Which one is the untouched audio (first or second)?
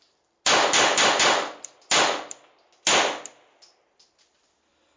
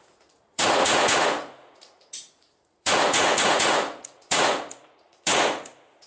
first